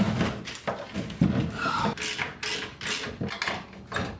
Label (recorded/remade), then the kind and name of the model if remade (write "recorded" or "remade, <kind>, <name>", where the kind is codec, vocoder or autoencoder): recorded